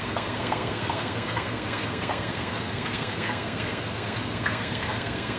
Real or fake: fake